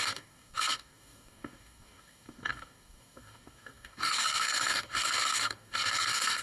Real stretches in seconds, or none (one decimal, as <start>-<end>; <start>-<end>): none